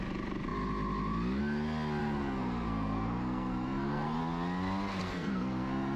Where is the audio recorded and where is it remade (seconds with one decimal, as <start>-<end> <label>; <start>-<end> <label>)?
0.0-2.0 recorded; 2.0-4.2 remade; 4.2-5.0 recorded; 5.0-6.0 remade